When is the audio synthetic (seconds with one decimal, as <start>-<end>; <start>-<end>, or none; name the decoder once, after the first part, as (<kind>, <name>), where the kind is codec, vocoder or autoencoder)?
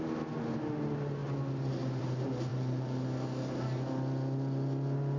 none